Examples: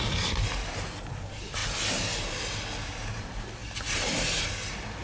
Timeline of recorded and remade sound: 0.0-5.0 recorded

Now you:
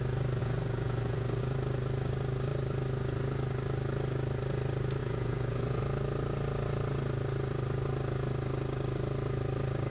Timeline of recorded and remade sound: 0.0-0.4 recorded; 0.4-1.4 remade; 1.4-5.0 recorded; 5.0-5.8 remade; 5.8-9.9 recorded

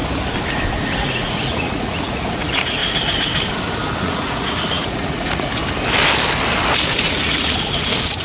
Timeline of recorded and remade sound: 0.0-1.0 recorded; 1.0-2.8 remade; 2.8-4.0 recorded; 4.0-5.6 remade; 5.6-6.9 recorded; 6.9-8.2 remade

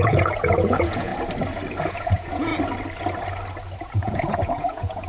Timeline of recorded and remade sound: 0.0-1.1 remade; 1.1-1.8 recorded; 1.8-2.5 remade; 2.5-3.8 recorded; 3.8-5.1 remade

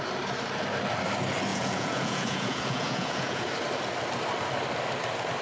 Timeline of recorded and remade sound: 0.0-1.5 recorded; 1.5-3.5 remade; 3.5-5.4 recorded

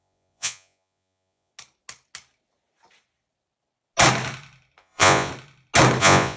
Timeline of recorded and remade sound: 0.0-1.5 remade; 1.5-4.8 recorded; 4.8-5.3 remade; 5.3-6.0 recorded; 6.0-6.4 remade

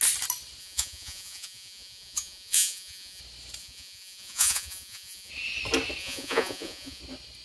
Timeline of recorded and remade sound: 0.0-0.6 recorded; 0.6-3.2 remade; 3.2-3.6 recorded; 3.6-5.3 remade; 5.3-6.0 recorded; 6.0-7.0 remade; 7.0-7.4 recorded

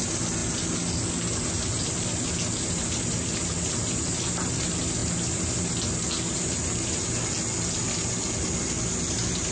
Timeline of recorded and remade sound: 0.0-9.5 recorded